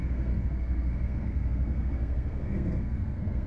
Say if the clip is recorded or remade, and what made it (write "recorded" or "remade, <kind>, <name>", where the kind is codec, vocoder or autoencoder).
remade, codec, SNAC